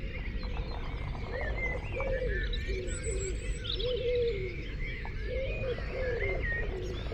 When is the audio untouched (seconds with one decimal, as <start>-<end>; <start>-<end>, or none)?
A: 0.0-4.4; 5.1-7.1